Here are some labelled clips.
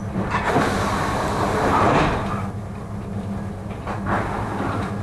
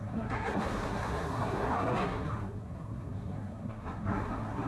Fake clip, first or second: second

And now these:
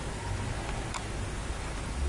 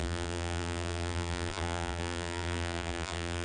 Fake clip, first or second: second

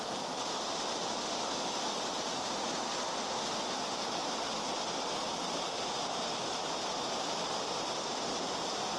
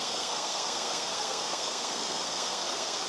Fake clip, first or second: second